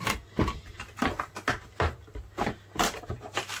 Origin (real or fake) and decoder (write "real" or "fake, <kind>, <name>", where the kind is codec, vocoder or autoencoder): real